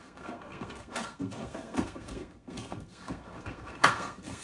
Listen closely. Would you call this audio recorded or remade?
remade